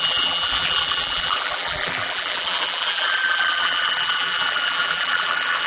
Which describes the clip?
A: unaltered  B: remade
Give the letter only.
B